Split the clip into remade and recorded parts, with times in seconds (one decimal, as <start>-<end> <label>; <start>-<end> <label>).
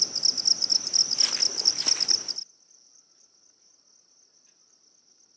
0.0-5.4 recorded